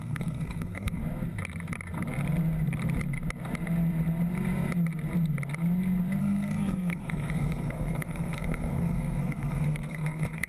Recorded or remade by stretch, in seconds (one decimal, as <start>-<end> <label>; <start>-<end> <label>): 0.0-1.0 remade; 1.0-6.2 recorded; 6.2-10.5 remade